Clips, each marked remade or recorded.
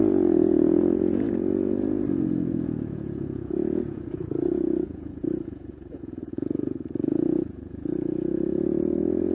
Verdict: remade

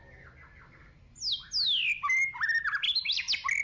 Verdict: recorded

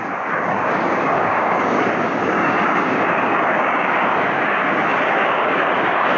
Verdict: remade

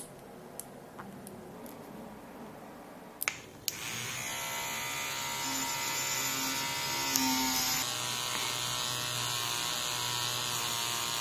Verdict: recorded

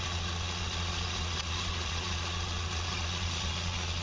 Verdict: remade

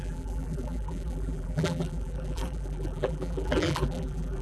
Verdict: remade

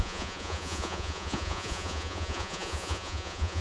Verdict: remade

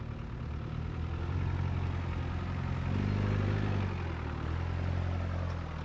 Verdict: recorded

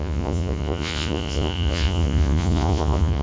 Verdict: remade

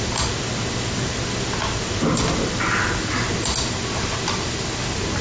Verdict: recorded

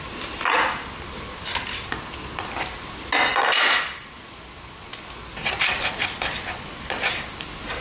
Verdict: recorded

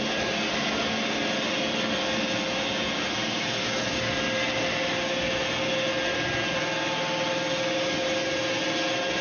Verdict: recorded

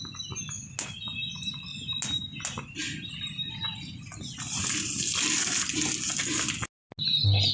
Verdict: recorded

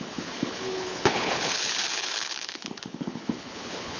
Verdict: remade